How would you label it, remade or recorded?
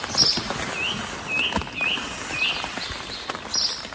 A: recorded